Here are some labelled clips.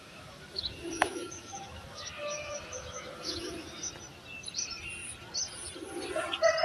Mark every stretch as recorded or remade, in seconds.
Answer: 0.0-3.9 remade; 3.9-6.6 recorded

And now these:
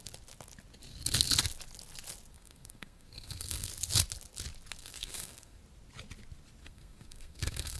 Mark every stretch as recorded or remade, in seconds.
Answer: 0.0-2.3 recorded; 2.3-3.7 remade; 3.7-4.8 recorded; 4.8-5.6 remade; 5.6-6.6 recorded; 6.6-7.8 remade